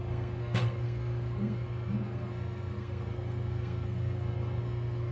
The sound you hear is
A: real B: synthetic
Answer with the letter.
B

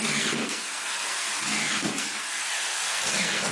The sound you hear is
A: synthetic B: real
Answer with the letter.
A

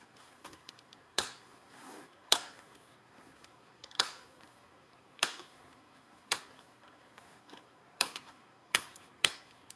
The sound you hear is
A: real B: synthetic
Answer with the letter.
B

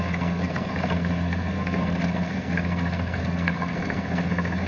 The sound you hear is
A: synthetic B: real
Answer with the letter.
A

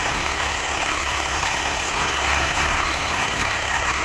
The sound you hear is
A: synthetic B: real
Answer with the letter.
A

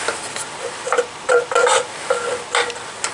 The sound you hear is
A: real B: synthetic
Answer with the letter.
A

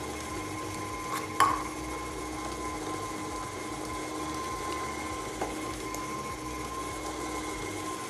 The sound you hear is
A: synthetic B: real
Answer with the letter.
B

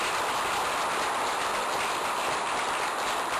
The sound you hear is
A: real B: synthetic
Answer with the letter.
A